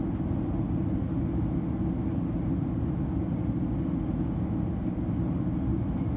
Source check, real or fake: real